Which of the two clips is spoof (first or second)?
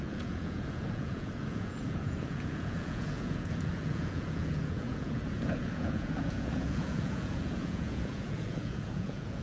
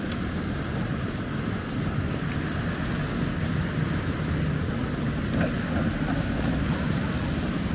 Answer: first